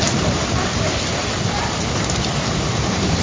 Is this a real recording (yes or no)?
no